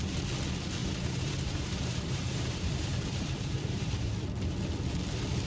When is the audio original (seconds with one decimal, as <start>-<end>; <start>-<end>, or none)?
0.0-0.8; 4.1-5.5